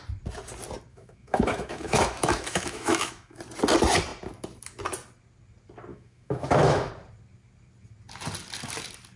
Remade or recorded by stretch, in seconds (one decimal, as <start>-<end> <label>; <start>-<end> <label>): 0.0-0.9 recorded; 0.9-3.4 remade; 3.4-5.9 recorded; 5.9-6.9 remade; 6.9-9.2 recorded